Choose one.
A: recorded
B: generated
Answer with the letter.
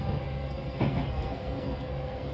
B